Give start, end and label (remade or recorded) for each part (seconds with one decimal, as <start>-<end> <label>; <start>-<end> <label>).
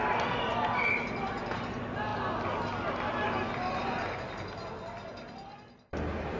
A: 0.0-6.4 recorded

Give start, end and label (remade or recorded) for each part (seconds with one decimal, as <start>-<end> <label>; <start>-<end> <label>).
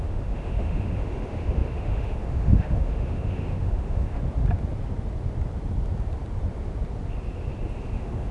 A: 0.0-4.2 remade; 4.2-7.9 recorded; 7.9-8.3 remade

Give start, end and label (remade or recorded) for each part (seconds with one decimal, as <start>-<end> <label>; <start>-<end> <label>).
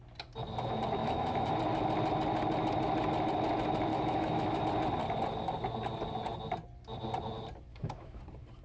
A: 0.0-1.0 recorded; 1.0-1.5 remade; 1.5-3.9 recorded; 3.9-4.6 remade; 4.6-7.7 recorded; 7.7-8.2 remade; 8.2-8.6 recorded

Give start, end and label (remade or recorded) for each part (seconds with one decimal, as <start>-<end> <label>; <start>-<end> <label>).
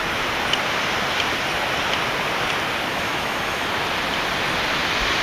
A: 0.0-2.9 recorded; 2.9-3.7 remade; 3.7-5.2 recorded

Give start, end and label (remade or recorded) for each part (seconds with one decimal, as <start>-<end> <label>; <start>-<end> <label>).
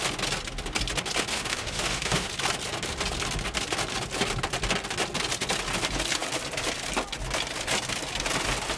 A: 0.0-1.3 recorded; 1.3-2.3 remade; 2.3-8.8 recorded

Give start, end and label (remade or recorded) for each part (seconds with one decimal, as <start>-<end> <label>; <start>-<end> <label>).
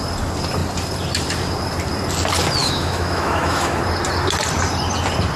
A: 0.0-2.6 recorded; 2.6-3.8 remade; 3.8-5.4 recorded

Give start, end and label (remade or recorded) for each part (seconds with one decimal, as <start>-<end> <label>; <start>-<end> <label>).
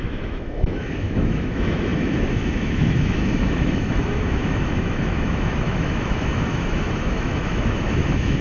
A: 0.0-8.4 remade